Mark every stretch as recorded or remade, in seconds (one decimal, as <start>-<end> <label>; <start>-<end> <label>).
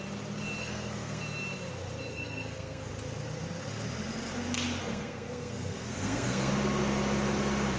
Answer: 0.0-0.6 recorded; 0.6-1.2 remade; 1.2-2.1 recorded; 2.1-2.9 remade; 2.9-4.8 recorded; 4.8-6.5 remade; 6.5-7.8 recorded